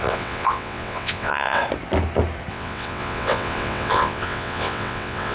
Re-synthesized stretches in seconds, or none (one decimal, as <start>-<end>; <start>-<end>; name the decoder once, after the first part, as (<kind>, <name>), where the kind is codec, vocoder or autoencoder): 0.0-1.6 (vocoder, WaveNeXt); 2.5-5.3